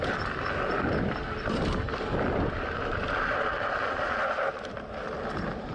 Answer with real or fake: real